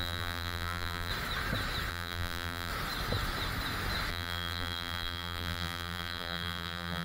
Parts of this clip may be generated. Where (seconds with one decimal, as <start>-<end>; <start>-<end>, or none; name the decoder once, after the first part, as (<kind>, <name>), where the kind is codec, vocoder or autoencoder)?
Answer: 0.0-1.1 (vocoder, BigVGAN v2); 1.9-2.7; 4.1-7.0

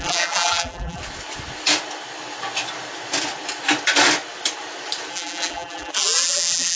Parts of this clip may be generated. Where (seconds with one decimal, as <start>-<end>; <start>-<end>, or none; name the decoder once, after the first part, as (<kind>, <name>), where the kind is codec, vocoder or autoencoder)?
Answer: 0.0-1.0 (vocoder, BigVGAN v2); 5.1-6.8

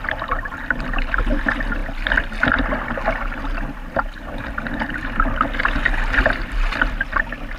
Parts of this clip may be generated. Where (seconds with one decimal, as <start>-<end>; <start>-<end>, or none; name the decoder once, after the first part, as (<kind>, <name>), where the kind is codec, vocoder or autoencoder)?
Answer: none

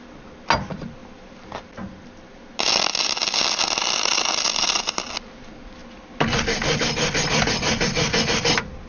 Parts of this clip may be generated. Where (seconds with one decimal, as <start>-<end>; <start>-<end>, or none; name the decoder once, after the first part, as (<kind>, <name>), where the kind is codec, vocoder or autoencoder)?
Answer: none

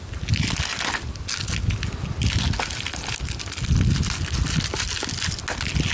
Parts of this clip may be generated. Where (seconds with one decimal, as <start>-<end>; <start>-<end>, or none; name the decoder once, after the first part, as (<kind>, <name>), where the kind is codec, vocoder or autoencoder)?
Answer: none

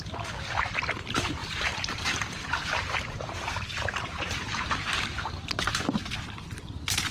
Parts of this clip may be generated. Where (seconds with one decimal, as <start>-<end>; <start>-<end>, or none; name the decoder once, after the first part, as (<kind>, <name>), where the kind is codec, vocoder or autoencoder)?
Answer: 1.4-5.1 (vocoder, BigVGAN v2)